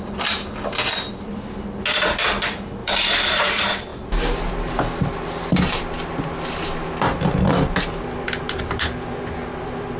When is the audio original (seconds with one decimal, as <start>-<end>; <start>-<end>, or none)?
0.0-2.8; 3.5-10.0